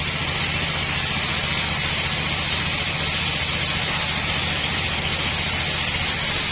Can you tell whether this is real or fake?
real